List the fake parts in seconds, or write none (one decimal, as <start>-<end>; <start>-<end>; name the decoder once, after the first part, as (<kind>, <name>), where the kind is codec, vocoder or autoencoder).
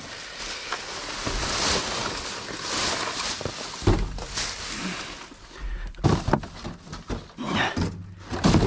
none